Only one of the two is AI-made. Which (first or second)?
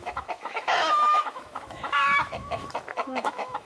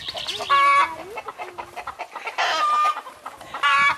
first